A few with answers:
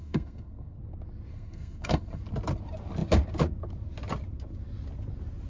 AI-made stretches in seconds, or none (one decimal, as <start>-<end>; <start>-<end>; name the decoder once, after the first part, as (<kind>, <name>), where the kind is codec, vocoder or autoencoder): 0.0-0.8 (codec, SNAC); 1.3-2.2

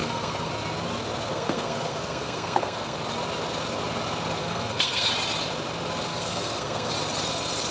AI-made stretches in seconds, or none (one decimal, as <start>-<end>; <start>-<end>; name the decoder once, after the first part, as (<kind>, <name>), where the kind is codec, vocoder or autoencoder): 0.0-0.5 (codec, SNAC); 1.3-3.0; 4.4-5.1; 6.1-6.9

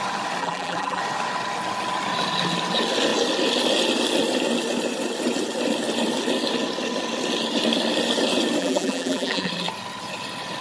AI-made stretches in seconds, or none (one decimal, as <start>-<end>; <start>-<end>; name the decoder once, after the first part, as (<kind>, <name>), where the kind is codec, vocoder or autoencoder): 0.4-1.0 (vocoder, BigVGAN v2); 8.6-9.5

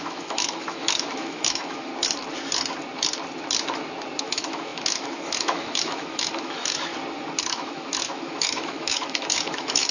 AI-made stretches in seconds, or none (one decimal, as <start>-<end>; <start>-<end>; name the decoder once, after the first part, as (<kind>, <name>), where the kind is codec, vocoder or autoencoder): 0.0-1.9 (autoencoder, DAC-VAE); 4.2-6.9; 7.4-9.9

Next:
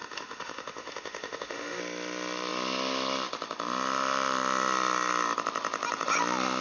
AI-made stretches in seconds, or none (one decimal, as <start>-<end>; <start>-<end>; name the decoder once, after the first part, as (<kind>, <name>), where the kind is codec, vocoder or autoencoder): 0.0-1.8 (autoencoder, DAC-VAE)

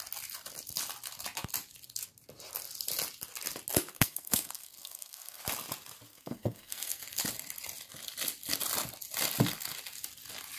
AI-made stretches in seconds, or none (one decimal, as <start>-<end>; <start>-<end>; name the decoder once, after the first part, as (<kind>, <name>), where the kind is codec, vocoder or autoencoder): 3.9-5.4 (codec, SNAC); 6.1-7.2